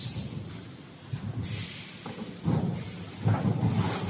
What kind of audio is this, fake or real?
real